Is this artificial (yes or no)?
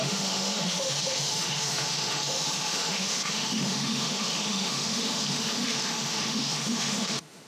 yes